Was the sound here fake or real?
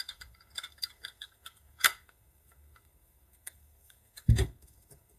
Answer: fake